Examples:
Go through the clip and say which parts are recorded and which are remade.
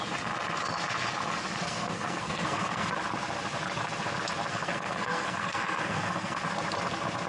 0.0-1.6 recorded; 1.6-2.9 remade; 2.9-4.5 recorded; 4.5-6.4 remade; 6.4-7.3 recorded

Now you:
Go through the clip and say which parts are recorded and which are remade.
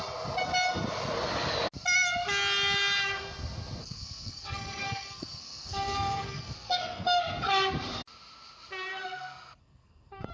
0.0-3.8 recorded; 3.8-7.2 remade; 7.2-8.9 recorded; 8.9-10.3 remade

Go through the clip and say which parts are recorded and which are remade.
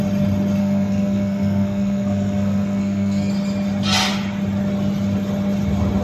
0.0-0.6 recorded; 0.6-3.3 remade; 3.3-6.0 recorded